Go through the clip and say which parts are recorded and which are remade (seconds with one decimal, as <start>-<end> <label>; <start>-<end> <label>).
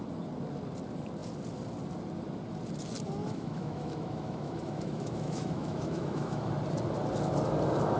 0.0-3.2 recorded; 3.2-6.5 remade; 6.5-8.0 recorded